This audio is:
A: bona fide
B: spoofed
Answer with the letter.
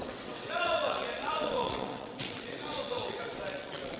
B